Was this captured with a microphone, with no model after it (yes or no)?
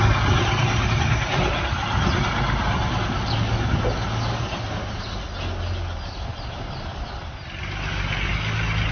yes